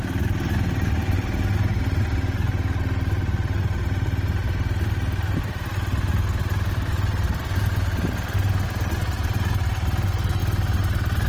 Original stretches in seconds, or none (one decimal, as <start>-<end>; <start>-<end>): 0.0-11.3